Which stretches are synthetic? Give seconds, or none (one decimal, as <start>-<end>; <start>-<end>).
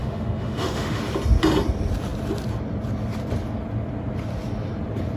0.0-1.0